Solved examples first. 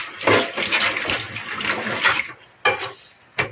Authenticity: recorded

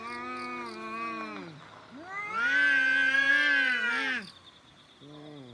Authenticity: recorded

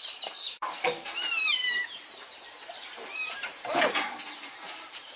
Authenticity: remade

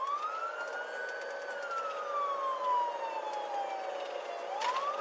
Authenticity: recorded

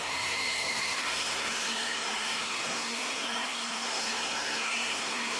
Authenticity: remade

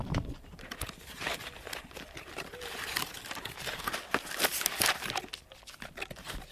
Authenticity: recorded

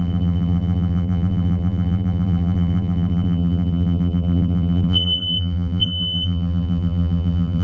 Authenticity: remade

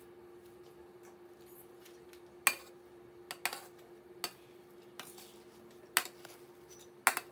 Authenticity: recorded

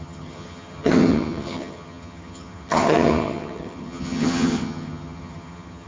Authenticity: remade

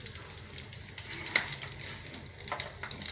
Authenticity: recorded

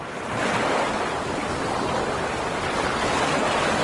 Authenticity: recorded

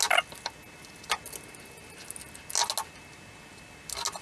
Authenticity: recorded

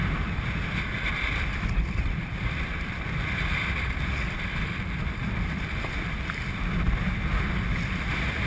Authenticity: remade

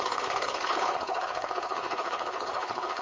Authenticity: remade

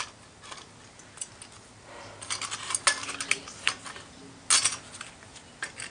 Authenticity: recorded